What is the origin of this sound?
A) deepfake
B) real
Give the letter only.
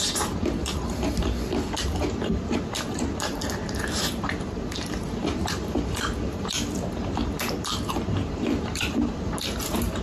A